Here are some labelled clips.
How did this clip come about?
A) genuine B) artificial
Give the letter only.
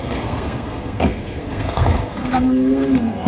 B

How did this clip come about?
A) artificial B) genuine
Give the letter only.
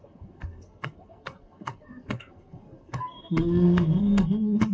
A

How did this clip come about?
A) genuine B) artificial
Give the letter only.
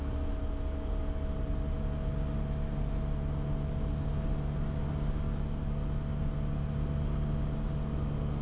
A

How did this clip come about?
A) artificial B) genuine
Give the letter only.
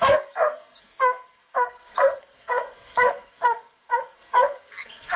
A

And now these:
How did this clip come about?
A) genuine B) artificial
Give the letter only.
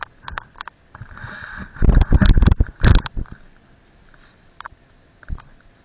A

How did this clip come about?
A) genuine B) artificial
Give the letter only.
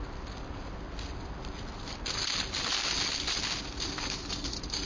A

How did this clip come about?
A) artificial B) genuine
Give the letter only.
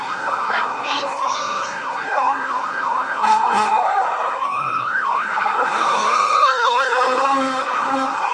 A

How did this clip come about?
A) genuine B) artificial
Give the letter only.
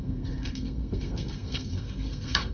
B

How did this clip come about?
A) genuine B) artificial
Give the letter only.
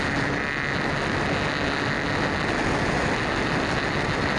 A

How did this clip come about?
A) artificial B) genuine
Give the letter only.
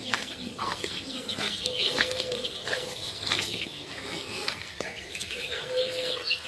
A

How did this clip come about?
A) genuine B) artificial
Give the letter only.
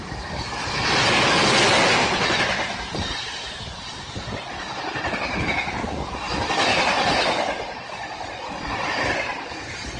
A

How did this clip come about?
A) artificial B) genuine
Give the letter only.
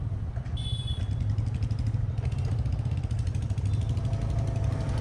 B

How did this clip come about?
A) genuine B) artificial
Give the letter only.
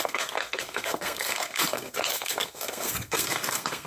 B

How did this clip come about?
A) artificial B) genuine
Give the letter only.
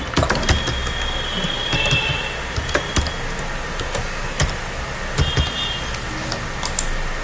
B